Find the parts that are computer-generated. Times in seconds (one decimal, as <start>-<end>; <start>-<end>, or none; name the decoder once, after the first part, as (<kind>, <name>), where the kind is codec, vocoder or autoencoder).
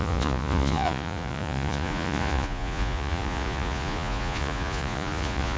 0.0-5.6 (vocoder, Vocos)